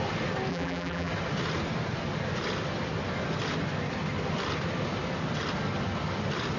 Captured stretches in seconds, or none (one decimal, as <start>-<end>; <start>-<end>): 0.0-0.5; 1.1-6.6